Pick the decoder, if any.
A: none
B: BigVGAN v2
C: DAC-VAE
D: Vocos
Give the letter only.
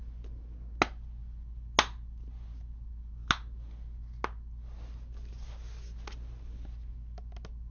A